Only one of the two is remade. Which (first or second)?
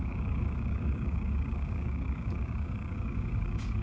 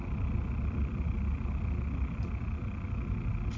first